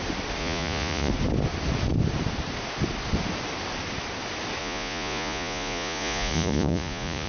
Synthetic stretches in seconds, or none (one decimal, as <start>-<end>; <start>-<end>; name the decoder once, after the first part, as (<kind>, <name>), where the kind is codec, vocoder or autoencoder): 0.4-1.1 (vocoder, Vocos); 4.6-7.3